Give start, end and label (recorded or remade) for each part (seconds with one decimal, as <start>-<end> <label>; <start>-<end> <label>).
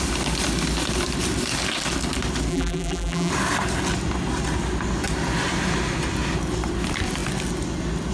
0.0-2.5 recorded; 2.5-3.3 remade; 3.3-8.1 recorded